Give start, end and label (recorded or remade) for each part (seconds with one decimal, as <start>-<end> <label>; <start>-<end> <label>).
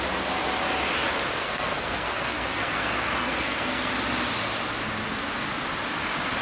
0.0-1.4 recorded; 1.4-3.9 remade; 3.9-6.4 recorded